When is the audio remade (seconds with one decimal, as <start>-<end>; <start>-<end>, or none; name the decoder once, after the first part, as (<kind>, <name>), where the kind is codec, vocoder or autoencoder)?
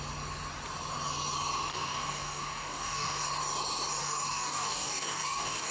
1.7-3.2 (codec, DAC); 4.0-5.7